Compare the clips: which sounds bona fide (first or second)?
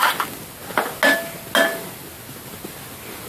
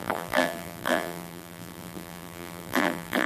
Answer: first